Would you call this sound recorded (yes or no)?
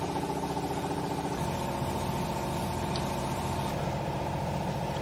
yes